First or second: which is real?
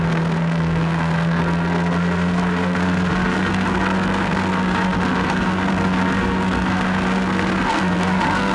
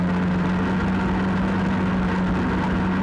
second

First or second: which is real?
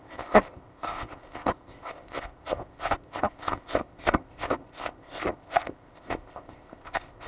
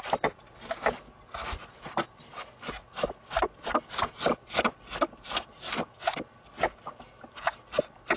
second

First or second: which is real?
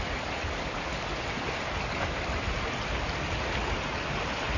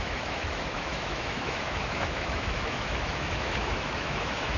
first